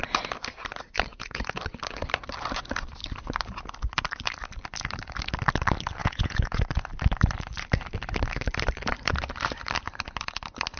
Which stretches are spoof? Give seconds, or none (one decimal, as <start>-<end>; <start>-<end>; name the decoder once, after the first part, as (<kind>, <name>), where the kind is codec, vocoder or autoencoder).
1.1-1.6 (vocoder, Vocos); 6.0-6.6

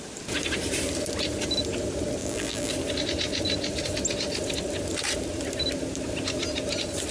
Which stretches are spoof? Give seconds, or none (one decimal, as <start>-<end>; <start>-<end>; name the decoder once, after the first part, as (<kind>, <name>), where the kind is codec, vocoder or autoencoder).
2.2-2.7 (vocoder, BigVGAN v2)

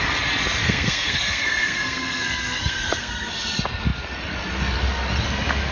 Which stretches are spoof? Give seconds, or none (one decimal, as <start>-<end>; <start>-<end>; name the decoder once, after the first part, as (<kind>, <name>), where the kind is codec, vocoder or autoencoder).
0.6-3.3 (codec, SNAC)

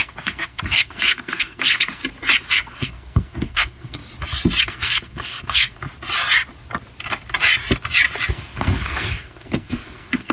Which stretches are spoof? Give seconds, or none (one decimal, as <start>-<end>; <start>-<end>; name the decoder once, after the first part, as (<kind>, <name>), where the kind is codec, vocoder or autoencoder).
0.0-2.0 (codec, SNAC); 2.5-4.0; 4.6-5.8; 8.3-10.3

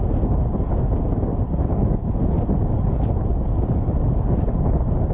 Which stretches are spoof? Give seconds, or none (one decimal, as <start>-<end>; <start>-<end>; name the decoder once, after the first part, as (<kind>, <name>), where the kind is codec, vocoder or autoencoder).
none

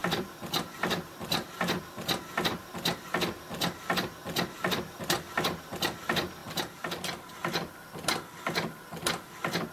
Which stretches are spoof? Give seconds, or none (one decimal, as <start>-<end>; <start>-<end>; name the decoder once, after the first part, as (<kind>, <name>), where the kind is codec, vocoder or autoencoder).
0.0-1.8 (vocoder, BigVGAN v2); 6.4-8.8

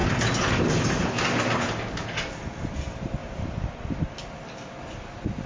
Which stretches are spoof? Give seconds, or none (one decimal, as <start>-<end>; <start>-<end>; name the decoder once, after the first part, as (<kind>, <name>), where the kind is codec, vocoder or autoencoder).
none